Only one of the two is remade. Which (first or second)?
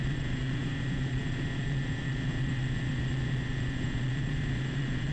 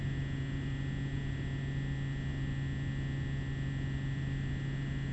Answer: first